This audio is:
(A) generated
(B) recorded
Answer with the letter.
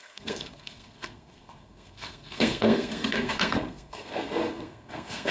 A